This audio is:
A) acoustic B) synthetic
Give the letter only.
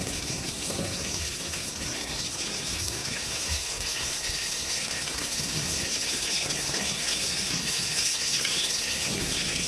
B